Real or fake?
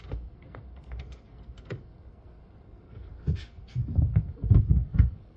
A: fake